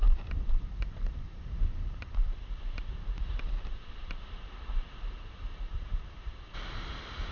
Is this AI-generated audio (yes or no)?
yes